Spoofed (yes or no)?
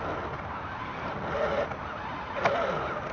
no